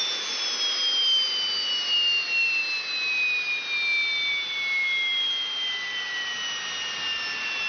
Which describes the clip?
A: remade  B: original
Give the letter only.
B